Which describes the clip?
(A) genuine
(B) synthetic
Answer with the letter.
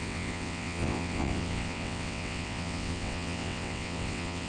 B